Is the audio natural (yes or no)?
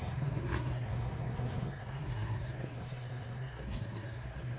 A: no